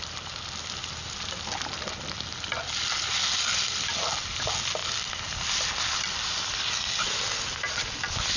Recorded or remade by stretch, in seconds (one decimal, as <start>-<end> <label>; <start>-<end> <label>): 0.0-8.4 recorded